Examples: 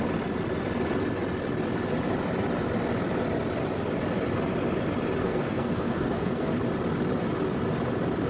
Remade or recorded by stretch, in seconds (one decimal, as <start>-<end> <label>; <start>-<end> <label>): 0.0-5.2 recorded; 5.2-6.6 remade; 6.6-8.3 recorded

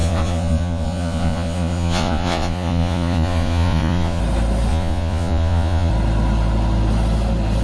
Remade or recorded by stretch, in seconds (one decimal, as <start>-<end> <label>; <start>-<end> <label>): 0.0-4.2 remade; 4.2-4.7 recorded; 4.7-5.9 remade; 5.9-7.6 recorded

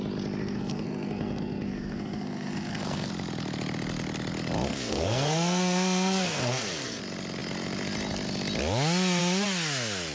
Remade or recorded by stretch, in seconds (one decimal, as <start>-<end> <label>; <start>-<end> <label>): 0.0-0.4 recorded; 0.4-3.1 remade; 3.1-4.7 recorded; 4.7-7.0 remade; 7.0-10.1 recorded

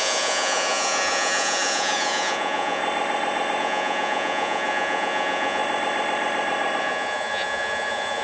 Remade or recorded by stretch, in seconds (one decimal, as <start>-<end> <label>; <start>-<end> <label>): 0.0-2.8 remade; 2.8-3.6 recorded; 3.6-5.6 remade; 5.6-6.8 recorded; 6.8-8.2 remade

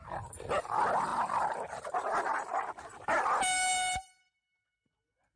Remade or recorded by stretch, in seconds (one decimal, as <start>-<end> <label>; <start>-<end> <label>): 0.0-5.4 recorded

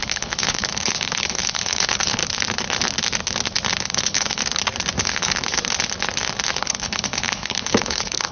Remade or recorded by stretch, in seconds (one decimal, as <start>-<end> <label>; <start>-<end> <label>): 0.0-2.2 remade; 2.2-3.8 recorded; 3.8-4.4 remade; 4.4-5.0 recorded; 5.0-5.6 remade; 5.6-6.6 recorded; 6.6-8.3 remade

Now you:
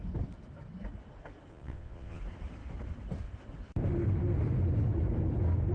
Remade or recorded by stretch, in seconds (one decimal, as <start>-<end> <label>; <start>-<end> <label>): 0.0-1.5 recorded; 1.5-2.2 remade; 2.2-5.7 recorded